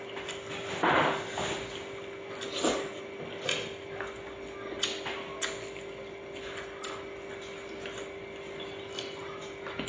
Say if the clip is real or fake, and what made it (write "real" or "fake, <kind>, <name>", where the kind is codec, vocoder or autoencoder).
real